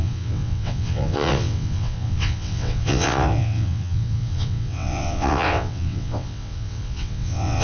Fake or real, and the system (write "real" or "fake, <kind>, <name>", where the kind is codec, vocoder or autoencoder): fake, vocoder, WaveNeXt